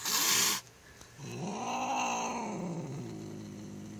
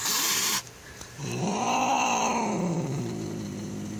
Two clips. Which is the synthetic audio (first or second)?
second